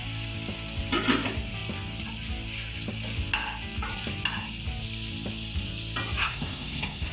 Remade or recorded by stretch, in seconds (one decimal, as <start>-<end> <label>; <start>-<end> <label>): 0.0-6.2 recorded; 6.2-7.1 remade